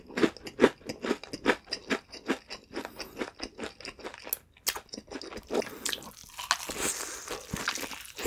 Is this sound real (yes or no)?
yes